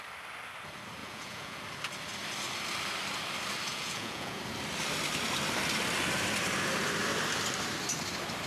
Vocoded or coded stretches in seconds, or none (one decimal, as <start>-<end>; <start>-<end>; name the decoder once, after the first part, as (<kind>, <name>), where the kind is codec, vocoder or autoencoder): 1.0-1.6 (vocoder, Vocos); 3.7-4.4